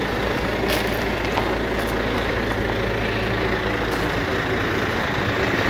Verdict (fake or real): real